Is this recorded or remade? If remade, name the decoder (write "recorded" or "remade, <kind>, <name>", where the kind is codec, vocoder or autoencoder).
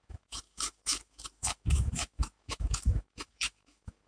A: remade, autoencoder, DAC-VAE